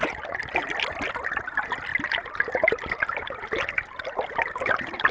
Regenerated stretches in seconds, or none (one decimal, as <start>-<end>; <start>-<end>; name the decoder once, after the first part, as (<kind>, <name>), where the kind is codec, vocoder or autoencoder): none